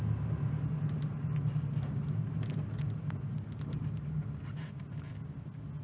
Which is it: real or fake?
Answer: real